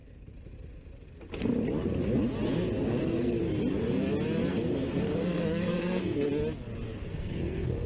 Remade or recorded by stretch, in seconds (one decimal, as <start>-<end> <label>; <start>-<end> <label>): 0.0-3.0 recorded; 3.0-3.4 remade; 3.4-4.5 recorded; 4.5-6.3 remade; 6.3-7.1 recorded; 7.1-7.9 remade